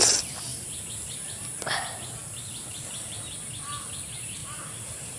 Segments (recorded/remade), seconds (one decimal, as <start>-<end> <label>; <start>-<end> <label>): 0.0-0.5 recorded; 0.5-3.1 remade; 3.1-4.4 recorded; 4.4-5.2 remade